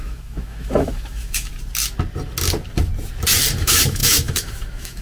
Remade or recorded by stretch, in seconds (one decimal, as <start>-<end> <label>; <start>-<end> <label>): 0.0-1.5 remade; 1.5-3.6 recorded; 3.6-5.0 remade